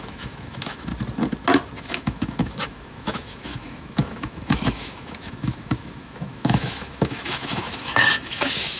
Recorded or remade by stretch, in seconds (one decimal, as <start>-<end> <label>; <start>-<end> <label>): 0.0-0.9 remade; 0.9-1.8 recorded; 1.8-8.8 remade